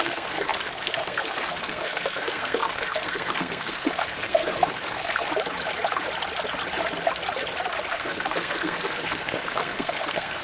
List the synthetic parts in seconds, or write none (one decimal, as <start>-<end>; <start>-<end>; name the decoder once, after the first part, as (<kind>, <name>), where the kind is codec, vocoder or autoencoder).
0.0-5.3 (codec, SNAC); 7.9-10.4